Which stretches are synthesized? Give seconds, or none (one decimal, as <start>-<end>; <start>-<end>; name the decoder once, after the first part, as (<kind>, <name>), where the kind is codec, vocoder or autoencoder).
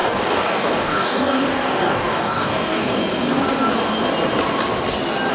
0.0-3.0 (codec, DAC)